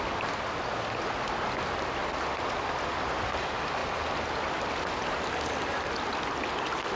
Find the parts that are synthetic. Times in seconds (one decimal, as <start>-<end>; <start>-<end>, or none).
none